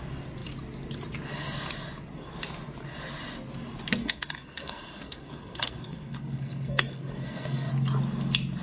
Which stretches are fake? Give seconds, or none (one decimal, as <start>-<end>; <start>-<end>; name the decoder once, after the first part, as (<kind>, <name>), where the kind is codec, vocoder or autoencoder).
4.0-7.7 (codec, SNAC)